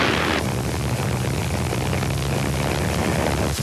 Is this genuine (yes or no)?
yes